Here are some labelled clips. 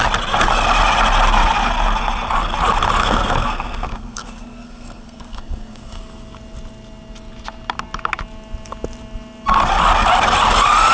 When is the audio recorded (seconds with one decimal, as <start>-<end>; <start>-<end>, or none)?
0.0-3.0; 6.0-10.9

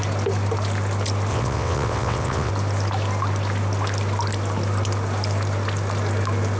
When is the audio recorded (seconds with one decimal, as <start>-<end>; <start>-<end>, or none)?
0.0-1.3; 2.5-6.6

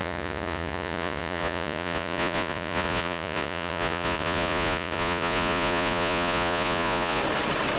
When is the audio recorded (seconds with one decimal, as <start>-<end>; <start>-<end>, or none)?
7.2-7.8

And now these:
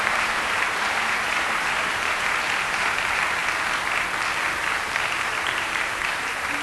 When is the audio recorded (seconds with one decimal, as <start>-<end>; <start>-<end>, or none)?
3.4-5.1